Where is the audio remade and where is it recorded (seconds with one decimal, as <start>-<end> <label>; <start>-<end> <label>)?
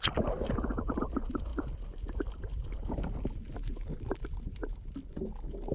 0.0-5.7 recorded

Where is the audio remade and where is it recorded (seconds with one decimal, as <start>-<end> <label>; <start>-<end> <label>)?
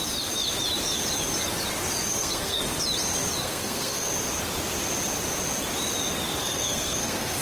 0.0-2.1 recorded; 2.1-2.6 remade; 2.6-3.4 recorded; 3.4-4.1 remade; 4.1-6.4 recorded; 6.4-7.4 remade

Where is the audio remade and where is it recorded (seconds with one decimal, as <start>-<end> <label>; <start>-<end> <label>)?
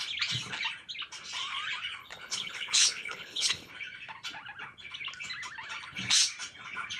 0.0-2.0 recorded; 2.0-3.7 remade; 3.7-7.0 recorded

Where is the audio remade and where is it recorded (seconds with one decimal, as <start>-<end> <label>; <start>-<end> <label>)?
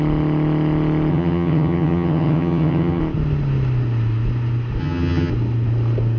0.0-1.1 recorded; 1.1-3.0 remade; 3.0-4.8 recorded; 4.8-5.3 remade; 5.3-6.2 recorded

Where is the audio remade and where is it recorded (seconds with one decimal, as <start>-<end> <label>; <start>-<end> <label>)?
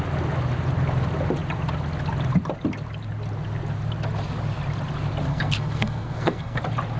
0.0-5.3 recorded; 5.3-6.6 remade; 6.6-7.0 recorded